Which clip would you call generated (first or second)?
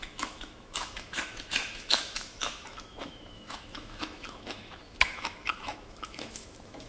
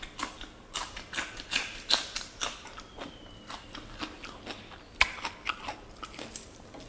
first